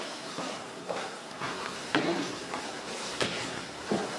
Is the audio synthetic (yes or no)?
yes